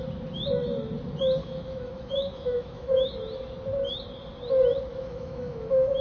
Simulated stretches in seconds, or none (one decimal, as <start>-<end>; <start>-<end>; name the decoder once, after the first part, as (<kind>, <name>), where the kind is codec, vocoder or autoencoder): 1.4-3.1 (autoencoder, DAC-VAE); 4.9-6.0